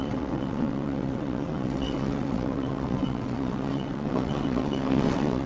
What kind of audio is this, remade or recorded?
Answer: remade